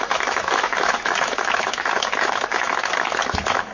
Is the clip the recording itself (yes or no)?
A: no